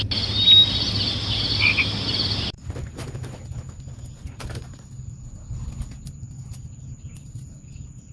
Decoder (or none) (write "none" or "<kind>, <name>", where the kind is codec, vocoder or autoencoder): none